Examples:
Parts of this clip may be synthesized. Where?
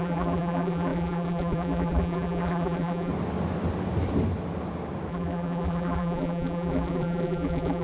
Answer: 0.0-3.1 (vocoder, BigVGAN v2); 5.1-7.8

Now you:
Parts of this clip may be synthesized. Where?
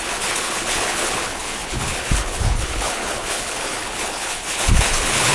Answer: 0.0-5.3 (codec, HILCodec)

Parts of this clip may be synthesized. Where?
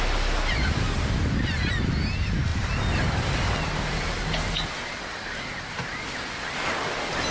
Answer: none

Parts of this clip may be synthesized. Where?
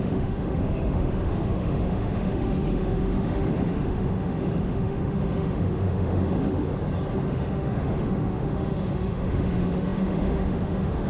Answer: 0.0-6.7 (autoencoder, DAC-VAE); 7.3-11.1